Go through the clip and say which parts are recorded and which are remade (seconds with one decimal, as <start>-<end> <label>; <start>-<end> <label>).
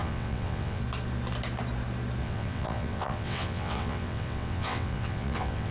0.0-0.8 remade; 0.8-2.2 recorded; 2.2-5.7 remade